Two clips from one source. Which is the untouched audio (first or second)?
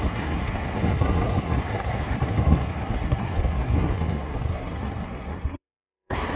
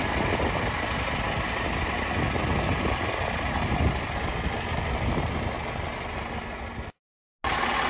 second